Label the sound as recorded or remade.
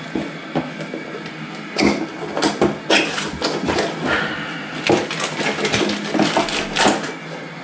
recorded